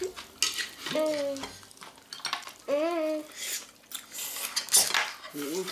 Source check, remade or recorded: recorded